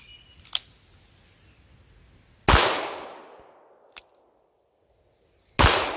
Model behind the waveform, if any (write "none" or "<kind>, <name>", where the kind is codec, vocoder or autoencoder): none